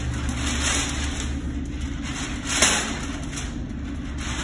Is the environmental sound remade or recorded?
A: recorded